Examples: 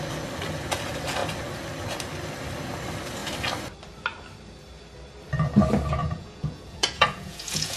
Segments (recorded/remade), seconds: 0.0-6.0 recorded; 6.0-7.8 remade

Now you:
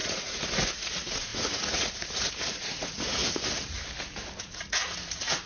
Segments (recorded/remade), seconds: 0.0-3.2 remade; 3.2-4.4 recorded; 4.4-5.5 remade

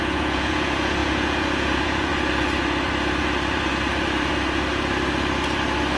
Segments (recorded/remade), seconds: 0.0-2.1 remade; 2.1-6.0 recorded

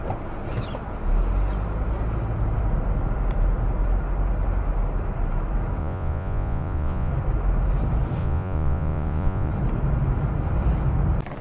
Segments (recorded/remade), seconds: 0.0-5.8 recorded; 5.8-7.1 remade; 7.1-8.2 recorded; 8.2-9.5 remade; 9.5-11.4 recorded

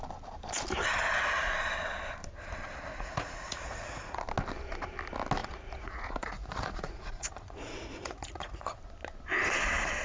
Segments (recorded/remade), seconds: 0.0-2.9 recorded; 2.9-4.2 remade; 4.2-5.4 recorded; 5.4-8.8 remade; 8.8-10.0 recorded

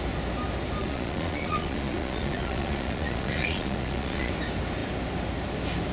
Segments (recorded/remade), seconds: 0.0-0.8 recorded; 0.8-4.3 remade; 4.3-5.9 recorded

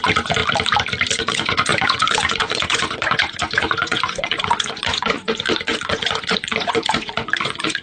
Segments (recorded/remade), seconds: 0.0-0.4 remade; 0.4-1.1 recorded; 1.1-7.8 remade